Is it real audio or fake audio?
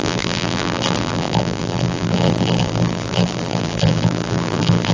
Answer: fake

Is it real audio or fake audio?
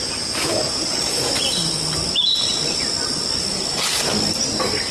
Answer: real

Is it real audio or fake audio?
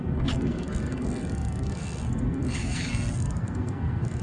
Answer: fake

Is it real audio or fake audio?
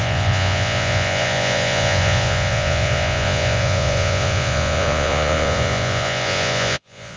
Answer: fake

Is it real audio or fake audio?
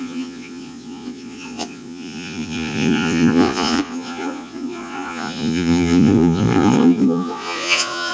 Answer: fake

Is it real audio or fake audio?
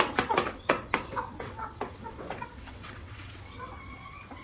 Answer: fake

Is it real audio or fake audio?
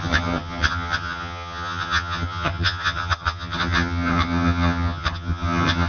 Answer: fake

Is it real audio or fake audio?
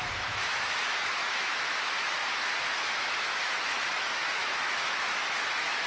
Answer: fake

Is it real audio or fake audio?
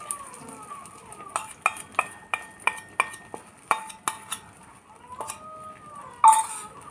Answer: real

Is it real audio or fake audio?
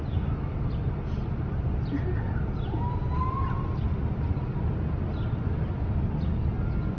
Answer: real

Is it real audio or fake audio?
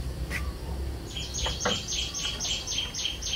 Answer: real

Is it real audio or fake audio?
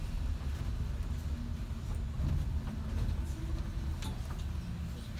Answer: real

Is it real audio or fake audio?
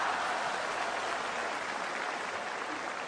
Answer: real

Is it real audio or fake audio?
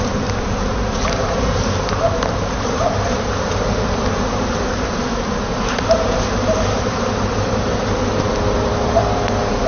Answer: fake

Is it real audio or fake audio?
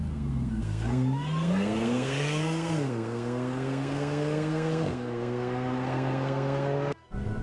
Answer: fake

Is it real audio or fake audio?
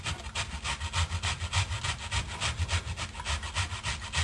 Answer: real